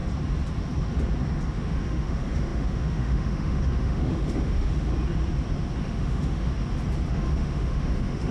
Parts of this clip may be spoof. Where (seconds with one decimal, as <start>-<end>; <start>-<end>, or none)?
1.5-4.9; 5.8-6.5; 7.1-8.3